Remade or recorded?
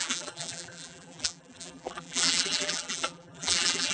remade